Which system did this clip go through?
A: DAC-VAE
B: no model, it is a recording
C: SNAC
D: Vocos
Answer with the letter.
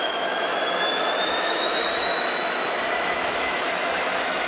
A